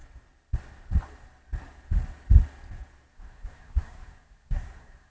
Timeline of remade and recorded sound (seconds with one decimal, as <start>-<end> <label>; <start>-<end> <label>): 0.0-3.1 recorded; 3.1-5.1 remade